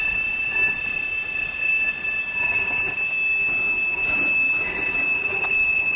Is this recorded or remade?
recorded